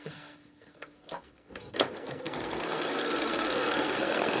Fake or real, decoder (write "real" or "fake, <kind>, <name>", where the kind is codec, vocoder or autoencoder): fake, codec, SNAC